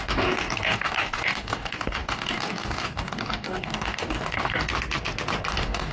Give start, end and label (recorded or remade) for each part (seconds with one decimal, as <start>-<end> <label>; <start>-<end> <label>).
0.0-4.7 remade; 4.7-5.5 recorded; 5.5-5.9 remade